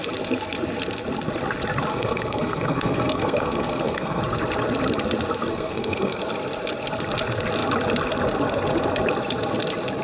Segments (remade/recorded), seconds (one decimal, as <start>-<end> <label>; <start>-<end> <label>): 0.0-1.9 recorded; 1.9-4.2 remade; 4.2-5.5 recorded; 5.5-6.2 remade; 6.2-10.0 recorded